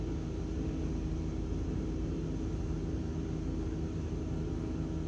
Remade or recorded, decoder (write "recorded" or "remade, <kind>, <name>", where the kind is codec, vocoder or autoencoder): recorded